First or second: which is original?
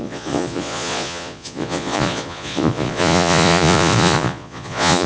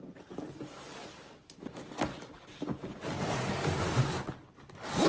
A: second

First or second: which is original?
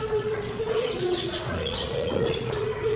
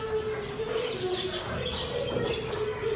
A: second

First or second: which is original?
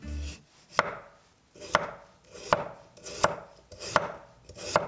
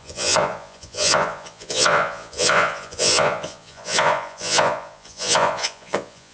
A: first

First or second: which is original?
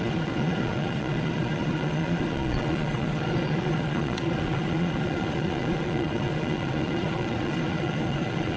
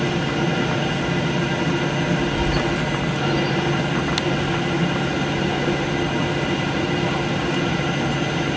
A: second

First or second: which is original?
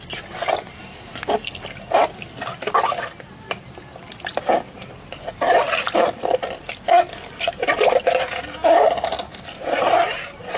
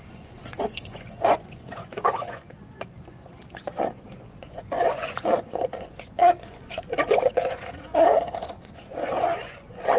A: first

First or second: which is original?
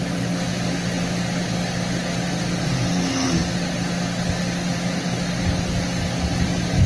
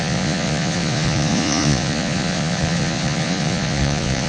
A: first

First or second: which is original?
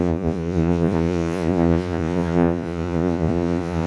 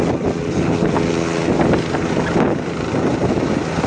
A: second